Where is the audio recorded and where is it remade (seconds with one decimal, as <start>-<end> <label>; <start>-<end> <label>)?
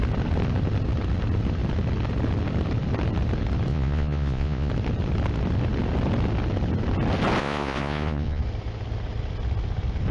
0.0-3.7 recorded; 3.7-4.7 remade; 4.7-7.4 recorded; 7.4-8.4 remade; 8.4-10.1 recorded